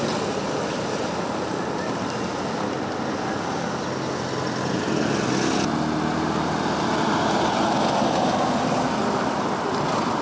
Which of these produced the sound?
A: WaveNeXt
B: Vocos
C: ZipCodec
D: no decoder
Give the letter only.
D